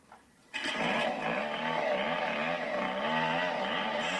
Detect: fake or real real